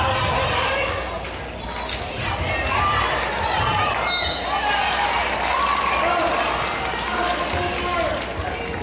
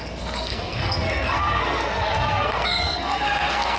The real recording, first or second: first